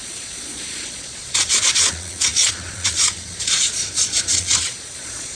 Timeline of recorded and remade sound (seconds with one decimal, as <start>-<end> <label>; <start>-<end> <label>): 0.0-5.3 remade